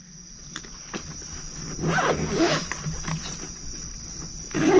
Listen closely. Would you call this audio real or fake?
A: real